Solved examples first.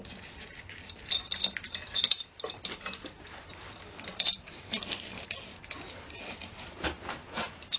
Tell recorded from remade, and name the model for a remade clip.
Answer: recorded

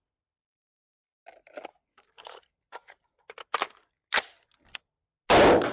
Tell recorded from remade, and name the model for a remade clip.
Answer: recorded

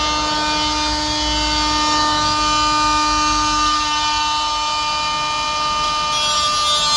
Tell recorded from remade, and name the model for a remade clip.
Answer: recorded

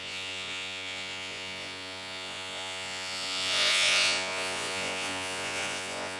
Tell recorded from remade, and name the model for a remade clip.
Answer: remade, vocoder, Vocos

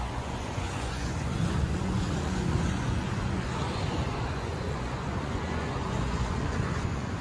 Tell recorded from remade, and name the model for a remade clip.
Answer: remade, vocoder, Vocos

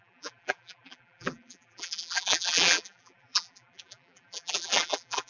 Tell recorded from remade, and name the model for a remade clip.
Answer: remade, vocoder, BigVGAN v2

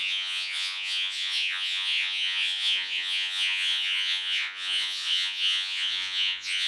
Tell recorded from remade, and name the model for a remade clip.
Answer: remade, vocoder, Vocos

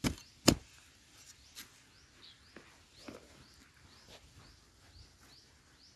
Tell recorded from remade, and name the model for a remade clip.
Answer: recorded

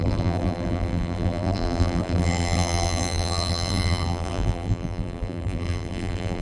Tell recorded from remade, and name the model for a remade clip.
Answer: remade, vocoder, BigVGAN v2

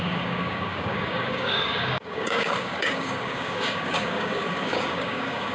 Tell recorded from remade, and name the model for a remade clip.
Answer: remade, codec, DAC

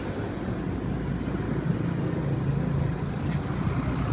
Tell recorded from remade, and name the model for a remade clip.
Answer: recorded